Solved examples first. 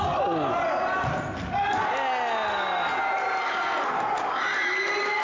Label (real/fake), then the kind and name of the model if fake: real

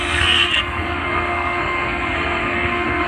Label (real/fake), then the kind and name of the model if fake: fake, codec, SNAC